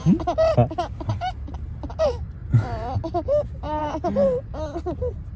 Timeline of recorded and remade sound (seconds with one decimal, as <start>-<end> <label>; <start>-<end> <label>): 0.0-5.4 recorded